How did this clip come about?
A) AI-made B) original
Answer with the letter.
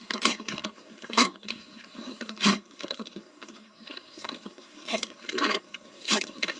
A